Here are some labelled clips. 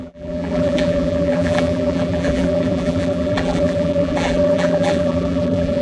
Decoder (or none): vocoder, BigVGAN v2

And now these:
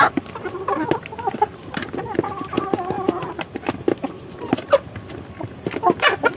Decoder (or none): none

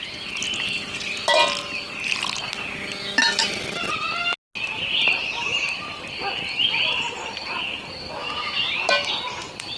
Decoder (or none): none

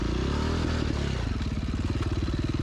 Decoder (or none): none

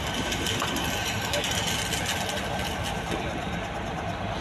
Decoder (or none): none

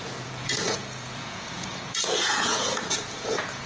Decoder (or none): vocoder, Vocos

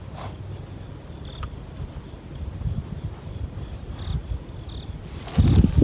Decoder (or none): none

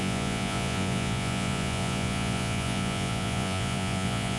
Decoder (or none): vocoder, Vocos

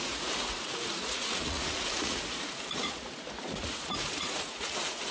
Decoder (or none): vocoder, Vocos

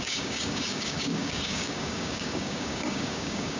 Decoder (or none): codec, DAC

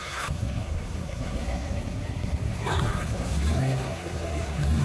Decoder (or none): codec, SNAC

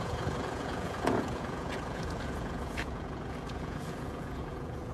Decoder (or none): vocoder, Vocos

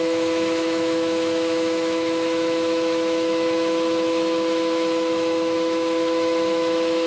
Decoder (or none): autoencoder, DAC-VAE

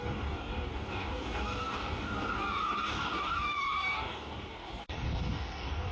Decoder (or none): codec, DAC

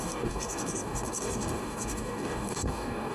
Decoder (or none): codec, DAC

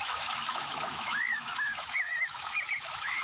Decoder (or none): autoencoder, DAC-VAE